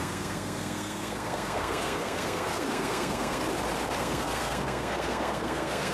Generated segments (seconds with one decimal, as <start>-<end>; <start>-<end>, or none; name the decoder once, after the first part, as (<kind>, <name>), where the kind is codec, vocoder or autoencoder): 0.0-3.4 (codec, SNAC); 4.0-5.9